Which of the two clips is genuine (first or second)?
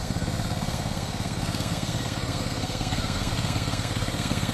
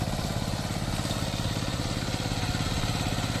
second